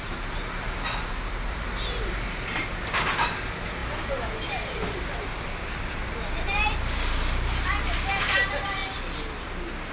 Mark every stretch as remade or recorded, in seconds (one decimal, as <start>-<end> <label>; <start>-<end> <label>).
0.0-8.8 remade; 8.8-9.9 recorded